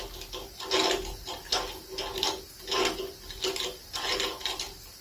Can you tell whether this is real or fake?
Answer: real